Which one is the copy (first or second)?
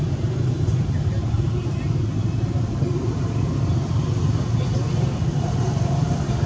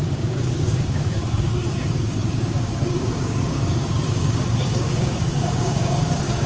second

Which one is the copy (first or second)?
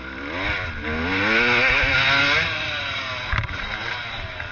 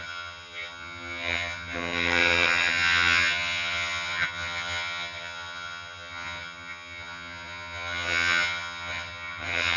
second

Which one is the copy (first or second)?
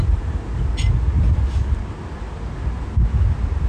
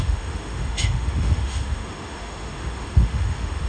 second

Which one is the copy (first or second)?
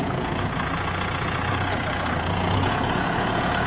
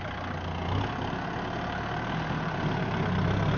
first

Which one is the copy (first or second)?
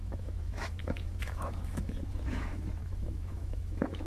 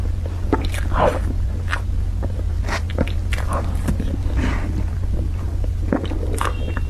first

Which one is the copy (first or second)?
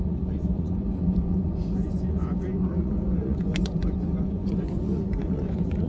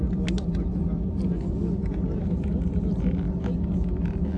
first